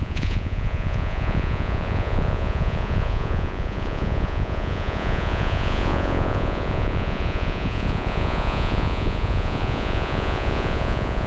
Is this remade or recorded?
remade